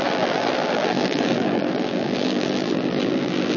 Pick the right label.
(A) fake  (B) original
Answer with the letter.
A